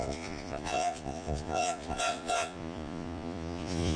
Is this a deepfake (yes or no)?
yes